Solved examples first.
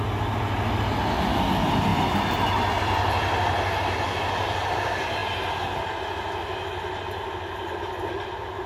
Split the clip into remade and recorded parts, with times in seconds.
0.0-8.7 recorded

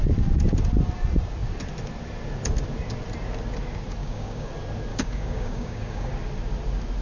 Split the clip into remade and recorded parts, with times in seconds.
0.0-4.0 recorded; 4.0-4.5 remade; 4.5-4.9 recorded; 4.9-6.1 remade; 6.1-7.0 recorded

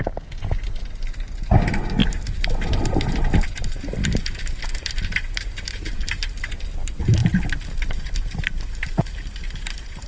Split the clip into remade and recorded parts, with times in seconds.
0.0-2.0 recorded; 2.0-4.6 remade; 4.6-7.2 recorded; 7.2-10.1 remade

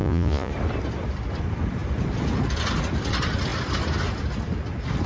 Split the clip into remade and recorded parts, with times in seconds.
0.0-0.5 remade; 0.5-5.1 recorded

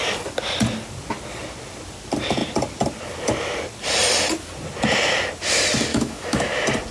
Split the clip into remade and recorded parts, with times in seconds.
0.0-5.9 recorded; 5.9-6.5 remade; 6.5-6.9 recorded

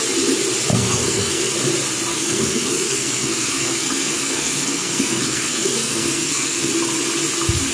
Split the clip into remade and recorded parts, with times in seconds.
0.0-0.7 recorded; 0.7-1.5 remade; 1.5-2.1 recorded; 2.1-6.7 remade; 6.7-7.7 recorded

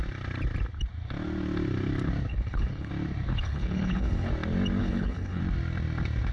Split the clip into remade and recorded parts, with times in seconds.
0.0-2.3 recorded; 2.3-2.9 remade; 2.9-3.3 recorded; 3.3-4.3 remade; 4.3-4.8 recorded; 4.8-5.4 remade; 5.4-6.3 recorded

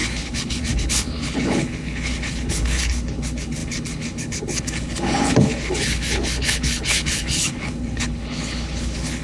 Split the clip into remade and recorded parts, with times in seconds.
0.0-9.2 remade